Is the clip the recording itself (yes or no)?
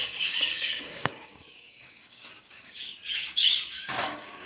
no